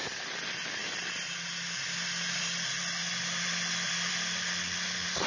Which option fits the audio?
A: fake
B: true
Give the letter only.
B